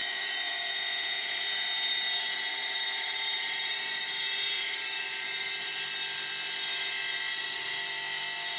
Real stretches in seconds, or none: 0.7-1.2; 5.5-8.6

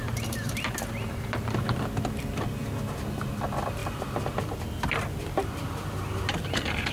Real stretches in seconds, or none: 2.6-3.3

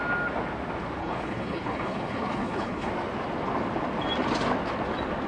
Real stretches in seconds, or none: 0.0-1.0; 2.9-5.3

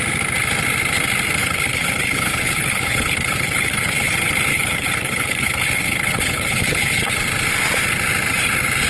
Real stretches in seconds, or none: 0.0-1.4; 4.1-4.5; 7.1-8.9

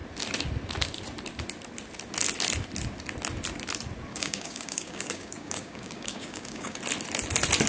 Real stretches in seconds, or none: 0.0-4.1; 6.8-7.7

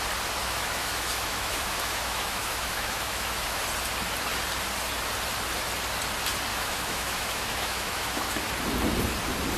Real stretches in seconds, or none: 0.0-0.4; 3.6-6.5; 8.5-9.6